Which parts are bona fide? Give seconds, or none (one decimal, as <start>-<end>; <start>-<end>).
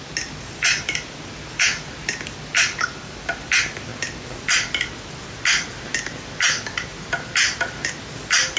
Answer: 0.0-8.6